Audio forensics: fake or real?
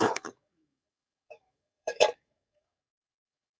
fake